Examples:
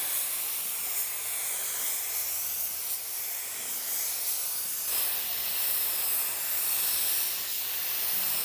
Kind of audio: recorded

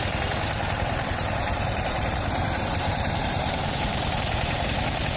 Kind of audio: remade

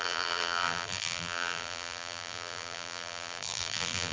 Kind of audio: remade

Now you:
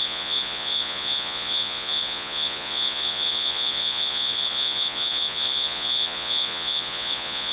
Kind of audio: remade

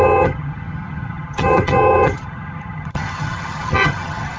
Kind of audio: remade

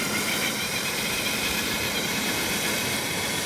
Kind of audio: remade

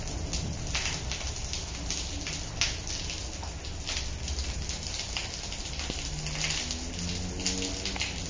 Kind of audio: recorded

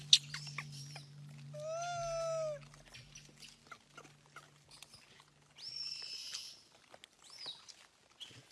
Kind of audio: recorded